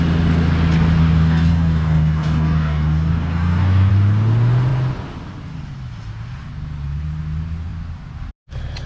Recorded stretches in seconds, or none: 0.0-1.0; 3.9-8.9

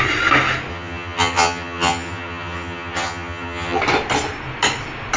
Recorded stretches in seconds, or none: 0.0-0.7; 3.8-5.2

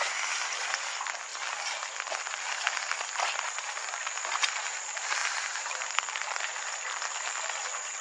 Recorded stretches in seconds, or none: 0.0-5.2; 7.0-8.0

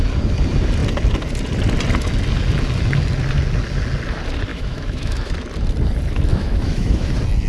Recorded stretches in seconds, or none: 0.0-4.5; 5.3-6.3; 7.1-7.5